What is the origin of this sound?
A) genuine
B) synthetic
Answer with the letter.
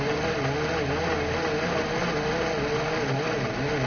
A